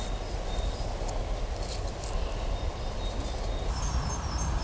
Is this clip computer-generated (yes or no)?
no